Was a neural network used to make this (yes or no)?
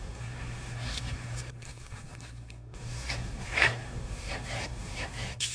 yes